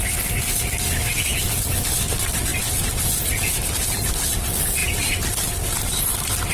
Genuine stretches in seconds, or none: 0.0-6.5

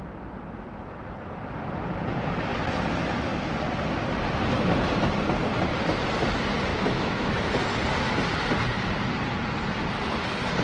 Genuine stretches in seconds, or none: 0.0-6.7; 7.3-10.6

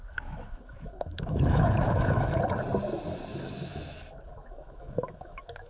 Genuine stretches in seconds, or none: 2.4-3.3

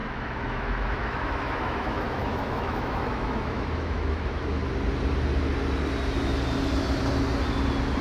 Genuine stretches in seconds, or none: 4.6-8.0

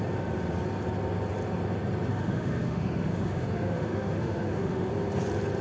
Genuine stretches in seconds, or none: 0.0-2.1; 4.9-5.6

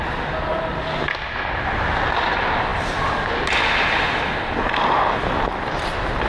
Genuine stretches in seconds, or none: 0.0-6.3